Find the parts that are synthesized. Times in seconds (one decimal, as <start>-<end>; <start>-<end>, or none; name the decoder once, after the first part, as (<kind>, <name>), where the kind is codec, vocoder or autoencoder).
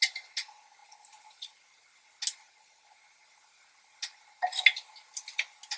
none